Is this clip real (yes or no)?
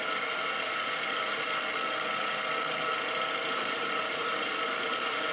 yes